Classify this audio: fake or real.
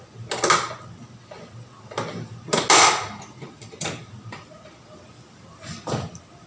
real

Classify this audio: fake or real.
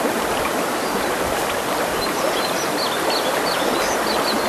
real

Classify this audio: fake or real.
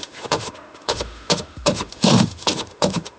fake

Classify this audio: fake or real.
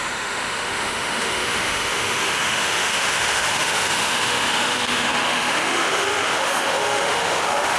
fake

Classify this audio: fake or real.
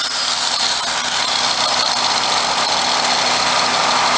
real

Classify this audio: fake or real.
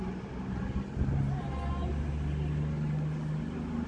real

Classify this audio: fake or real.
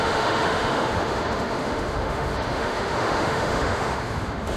fake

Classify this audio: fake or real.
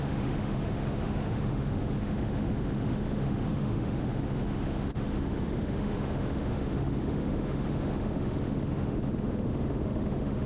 fake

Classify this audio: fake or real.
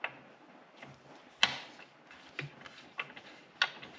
real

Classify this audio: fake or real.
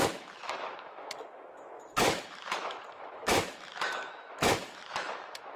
fake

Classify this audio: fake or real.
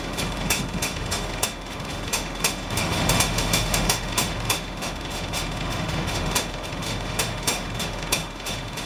fake